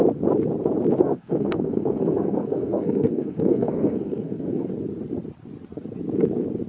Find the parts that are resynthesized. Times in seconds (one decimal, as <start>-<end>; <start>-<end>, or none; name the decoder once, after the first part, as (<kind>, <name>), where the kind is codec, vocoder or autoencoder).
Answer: 1.0-4.7 (codec, SNAC)

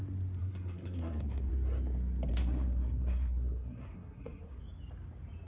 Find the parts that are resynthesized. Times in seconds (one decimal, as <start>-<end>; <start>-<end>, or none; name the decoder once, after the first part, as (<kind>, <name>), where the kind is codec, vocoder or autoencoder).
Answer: 0.4-1.5 (codec, SNAC); 2.3-4.6

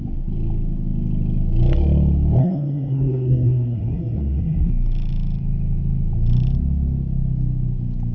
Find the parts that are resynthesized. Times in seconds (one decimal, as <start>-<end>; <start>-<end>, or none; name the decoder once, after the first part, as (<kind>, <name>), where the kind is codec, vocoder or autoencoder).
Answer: 2.4-4.7 (codec, SNAC)

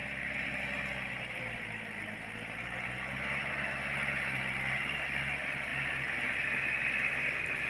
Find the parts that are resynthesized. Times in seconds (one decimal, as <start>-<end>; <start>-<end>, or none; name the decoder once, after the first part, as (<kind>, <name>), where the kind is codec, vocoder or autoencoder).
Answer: none

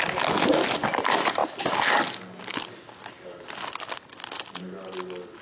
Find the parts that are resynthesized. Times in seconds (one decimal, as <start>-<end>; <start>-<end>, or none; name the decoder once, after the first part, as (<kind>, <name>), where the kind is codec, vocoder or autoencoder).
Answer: none

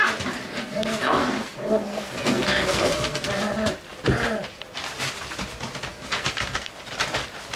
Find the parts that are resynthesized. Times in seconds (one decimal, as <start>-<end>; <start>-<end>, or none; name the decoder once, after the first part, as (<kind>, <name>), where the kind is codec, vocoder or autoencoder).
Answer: 0.6-3.3 (codec, SNAC); 5.9-6.7

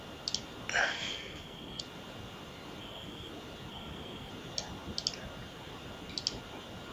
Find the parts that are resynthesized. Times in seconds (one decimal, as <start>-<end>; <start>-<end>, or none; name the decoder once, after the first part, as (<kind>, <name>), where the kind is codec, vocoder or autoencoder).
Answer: 0.8-1.8 (codec, SNAC); 2.8-3.3; 3.7-4.3

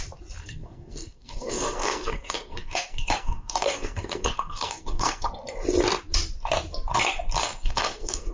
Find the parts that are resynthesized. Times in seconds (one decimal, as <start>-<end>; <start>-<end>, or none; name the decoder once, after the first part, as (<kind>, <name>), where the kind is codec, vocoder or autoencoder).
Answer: 0.4-5.3 (codec, SNAC); 7.4-8.3